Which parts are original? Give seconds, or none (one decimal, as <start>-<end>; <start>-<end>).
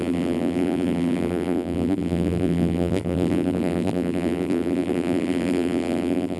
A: none